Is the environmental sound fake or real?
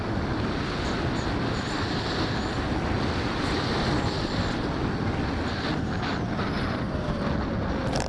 real